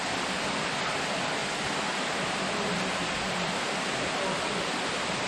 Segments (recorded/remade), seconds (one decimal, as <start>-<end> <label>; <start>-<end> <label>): 0.0-5.3 recorded